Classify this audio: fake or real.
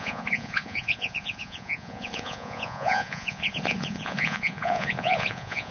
fake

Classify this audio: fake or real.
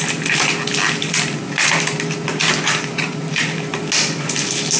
real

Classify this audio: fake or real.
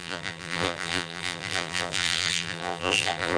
fake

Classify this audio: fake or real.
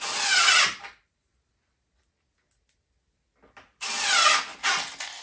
real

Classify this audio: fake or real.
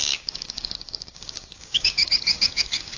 fake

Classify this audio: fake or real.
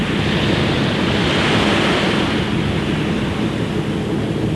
real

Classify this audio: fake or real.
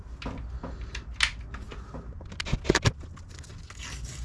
real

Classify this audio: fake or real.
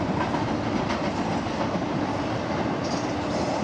real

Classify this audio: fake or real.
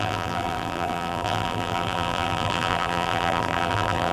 fake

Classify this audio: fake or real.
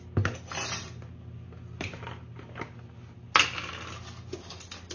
real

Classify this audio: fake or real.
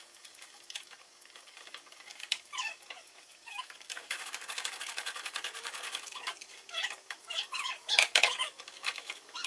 fake